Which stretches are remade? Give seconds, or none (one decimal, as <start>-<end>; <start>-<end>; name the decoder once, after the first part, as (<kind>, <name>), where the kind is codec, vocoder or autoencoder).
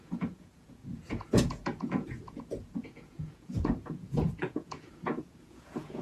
0.0-6.0 (vocoder, Vocos)